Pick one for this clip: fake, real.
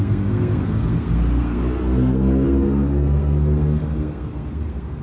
fake